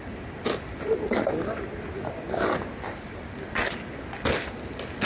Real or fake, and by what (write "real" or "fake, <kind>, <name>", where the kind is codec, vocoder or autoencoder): real